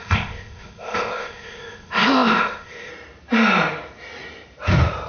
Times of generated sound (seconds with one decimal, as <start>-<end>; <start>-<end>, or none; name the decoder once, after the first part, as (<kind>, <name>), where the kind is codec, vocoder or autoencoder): 0.0-2.9 (codec, ZipCodec)